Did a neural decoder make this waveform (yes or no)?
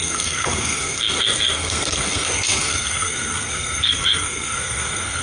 yes